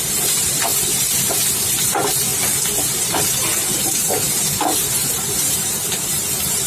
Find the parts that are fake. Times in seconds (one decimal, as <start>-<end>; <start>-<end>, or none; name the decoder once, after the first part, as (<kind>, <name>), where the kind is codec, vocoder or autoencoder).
0.0-0.7 (vocoder, BigVGAN v2); 1.8-2.3; 3.0-6.7